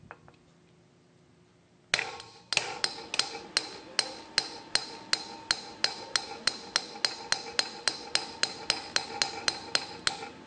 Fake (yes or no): no